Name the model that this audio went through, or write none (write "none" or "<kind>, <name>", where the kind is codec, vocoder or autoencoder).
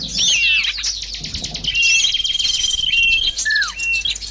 none